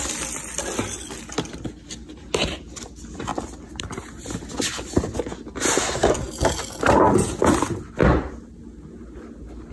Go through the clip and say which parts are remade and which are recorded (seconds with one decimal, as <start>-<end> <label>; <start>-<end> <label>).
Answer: 0.0-9.7 recorded